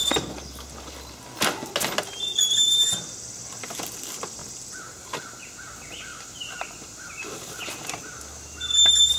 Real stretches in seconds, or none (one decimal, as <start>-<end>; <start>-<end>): 0.0-4.4; 5.5-6.1; 7.6-9.2